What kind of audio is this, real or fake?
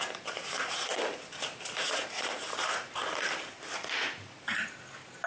fake